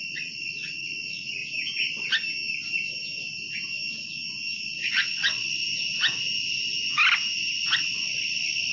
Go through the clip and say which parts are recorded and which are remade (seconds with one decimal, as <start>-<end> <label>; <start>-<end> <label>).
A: 0.0-1.4 remade; 1.4-4.8 recorded; 4.8-5.6 remade; 5.6-7.8 recorded; 7.8-8.7 remade